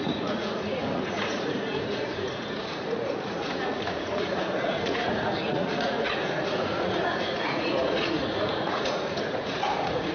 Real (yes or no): no